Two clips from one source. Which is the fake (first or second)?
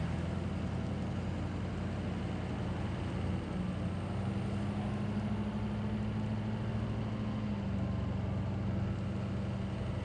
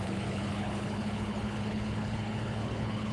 second